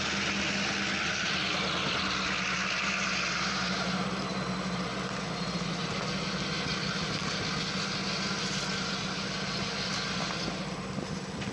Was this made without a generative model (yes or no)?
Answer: yes